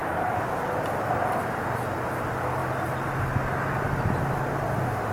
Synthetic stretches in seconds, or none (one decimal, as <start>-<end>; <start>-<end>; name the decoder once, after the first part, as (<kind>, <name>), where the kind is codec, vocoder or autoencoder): 0.0-0.6 (autoencoder, DAC-VAE)